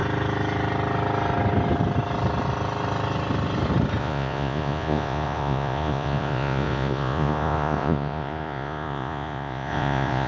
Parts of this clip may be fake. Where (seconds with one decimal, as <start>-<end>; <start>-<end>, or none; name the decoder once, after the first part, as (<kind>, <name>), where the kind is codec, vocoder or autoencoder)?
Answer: 4.0-10.3 (vocoder, Vocos)